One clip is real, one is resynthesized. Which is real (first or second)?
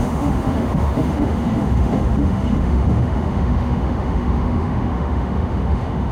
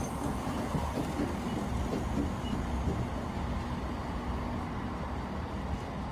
second